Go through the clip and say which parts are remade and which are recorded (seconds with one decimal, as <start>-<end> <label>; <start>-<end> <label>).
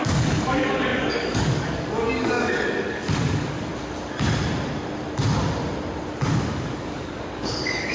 0.0-3.7 remade; 3.7-6.3 recorded; 6.3-7.9 remade